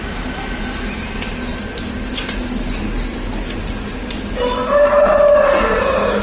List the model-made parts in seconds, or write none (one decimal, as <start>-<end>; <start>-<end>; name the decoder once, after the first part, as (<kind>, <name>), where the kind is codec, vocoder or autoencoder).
none